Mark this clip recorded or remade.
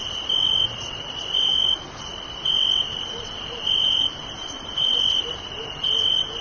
recorded